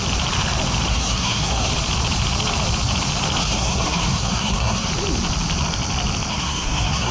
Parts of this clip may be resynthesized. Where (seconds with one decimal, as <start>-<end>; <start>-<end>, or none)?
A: 0.9-1.7; 3.4-4.9; 6.3-7.1